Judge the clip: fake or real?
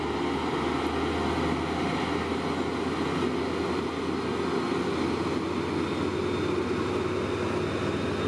real